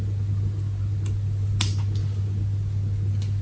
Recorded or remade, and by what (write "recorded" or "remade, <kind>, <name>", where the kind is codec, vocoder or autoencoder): recorded